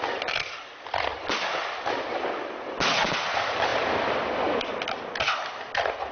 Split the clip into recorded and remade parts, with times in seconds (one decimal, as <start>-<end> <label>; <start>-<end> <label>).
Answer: 0.0-6.1 recorded